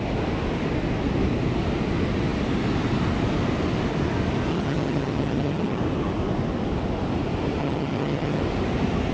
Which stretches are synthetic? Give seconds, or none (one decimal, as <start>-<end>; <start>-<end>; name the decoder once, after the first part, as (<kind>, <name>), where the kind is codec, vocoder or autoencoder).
4.5-5.8 (vocoder, HiFi-GAN); 7.6-8.4